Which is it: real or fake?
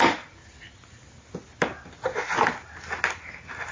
real